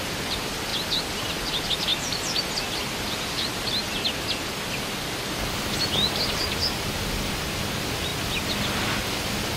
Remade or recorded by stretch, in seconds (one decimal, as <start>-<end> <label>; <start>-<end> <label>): 0.0-9.6 recorded